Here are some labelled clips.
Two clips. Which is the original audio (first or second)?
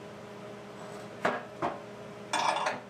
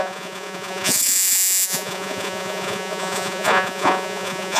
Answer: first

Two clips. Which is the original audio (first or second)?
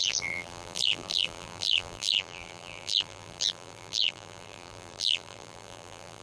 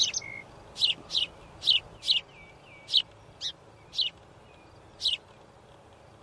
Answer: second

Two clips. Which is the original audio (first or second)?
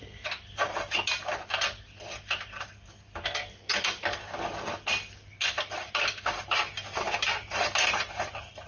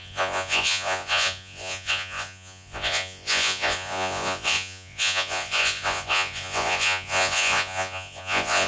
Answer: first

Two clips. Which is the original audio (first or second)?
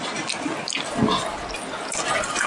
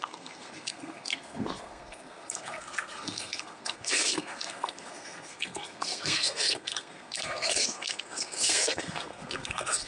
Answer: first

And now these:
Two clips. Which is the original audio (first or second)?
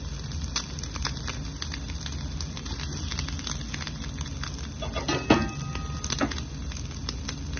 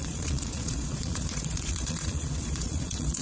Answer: first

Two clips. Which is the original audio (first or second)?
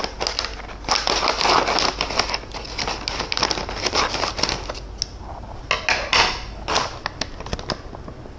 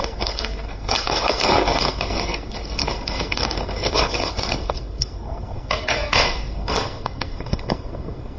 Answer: first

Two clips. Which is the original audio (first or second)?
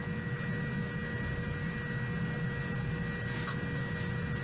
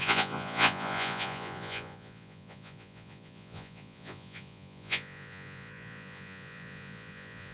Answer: first